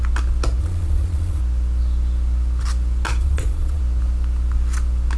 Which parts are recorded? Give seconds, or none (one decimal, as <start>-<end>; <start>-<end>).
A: 0.0-0.6; 1.4-3.2; 3.8-5.2